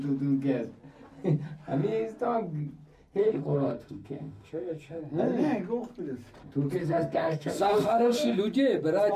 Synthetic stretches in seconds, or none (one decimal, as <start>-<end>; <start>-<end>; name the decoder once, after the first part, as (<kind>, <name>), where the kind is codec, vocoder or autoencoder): 3.2-5.0 (autoencoder, DAC-VAE); 6.8-8.4